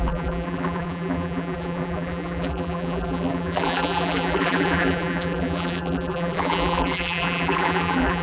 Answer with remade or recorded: remade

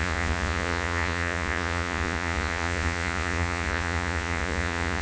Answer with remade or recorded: remade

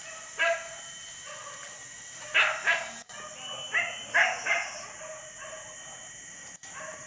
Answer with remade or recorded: recorded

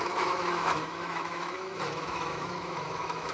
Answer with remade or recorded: remade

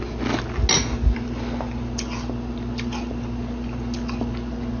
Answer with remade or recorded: recorded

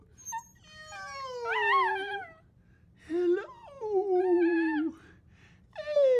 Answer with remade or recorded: recorded